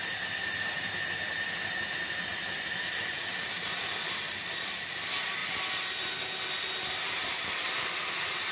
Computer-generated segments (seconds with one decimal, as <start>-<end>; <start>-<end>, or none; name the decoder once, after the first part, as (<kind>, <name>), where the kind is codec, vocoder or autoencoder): none